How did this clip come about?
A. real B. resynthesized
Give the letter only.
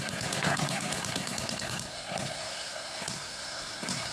B